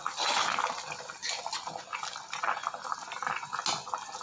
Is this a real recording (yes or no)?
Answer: yes